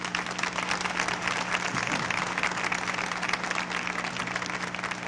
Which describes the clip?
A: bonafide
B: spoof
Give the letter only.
A